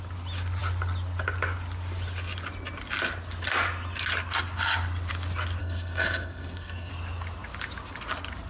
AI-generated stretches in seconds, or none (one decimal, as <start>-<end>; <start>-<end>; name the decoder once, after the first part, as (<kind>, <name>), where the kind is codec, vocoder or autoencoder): 5.6-6.9 (codec, SNAC)